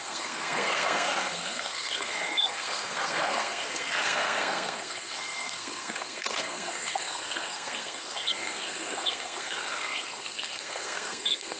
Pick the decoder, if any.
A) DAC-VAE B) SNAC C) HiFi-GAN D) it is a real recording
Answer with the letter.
B